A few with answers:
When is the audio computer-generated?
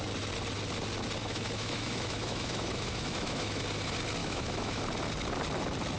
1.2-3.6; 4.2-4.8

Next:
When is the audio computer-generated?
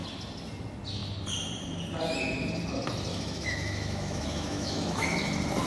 3.1-5.1